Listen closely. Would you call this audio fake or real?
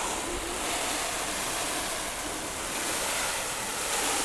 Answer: real